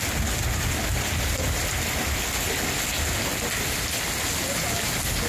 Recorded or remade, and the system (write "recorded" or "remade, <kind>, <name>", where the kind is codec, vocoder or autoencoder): recorded